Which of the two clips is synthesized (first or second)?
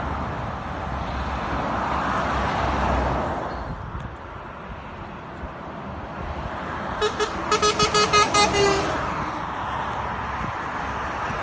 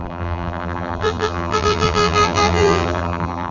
second